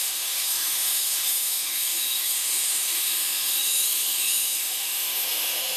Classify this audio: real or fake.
fake